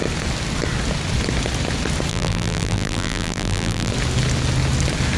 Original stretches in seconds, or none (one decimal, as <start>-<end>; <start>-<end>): 0.0-2.1; 3.9-5.2